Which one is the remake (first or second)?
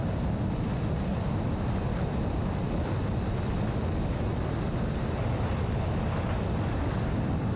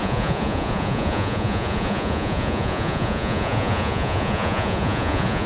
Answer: second